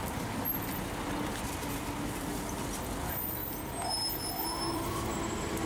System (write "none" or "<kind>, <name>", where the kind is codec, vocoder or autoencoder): vocoder, BigVGAN v2